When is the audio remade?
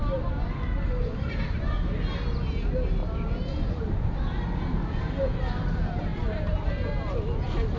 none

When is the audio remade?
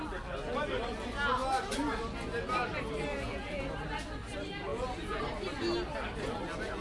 3.1-3.6 (vocoder, Vocos); 4.7-5.2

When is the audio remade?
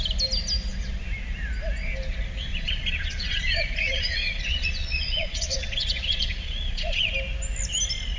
2.5-7.1 (vocoder, Vocos)